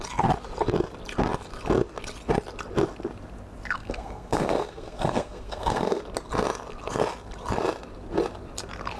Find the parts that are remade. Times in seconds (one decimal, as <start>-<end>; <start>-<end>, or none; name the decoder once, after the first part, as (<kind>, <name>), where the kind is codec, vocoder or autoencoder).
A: 3.8-6.0 (codec, SNAC)